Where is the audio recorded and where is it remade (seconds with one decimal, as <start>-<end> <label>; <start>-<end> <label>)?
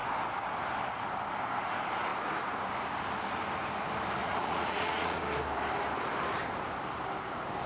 0.0-4.2 recorded; 4.2-5.2 remade; 5.2-7.7 recorded